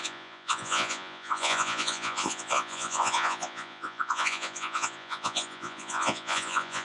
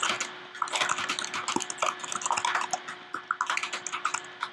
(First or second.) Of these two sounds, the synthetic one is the first